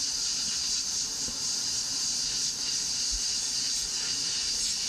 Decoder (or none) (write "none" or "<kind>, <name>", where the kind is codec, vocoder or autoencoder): none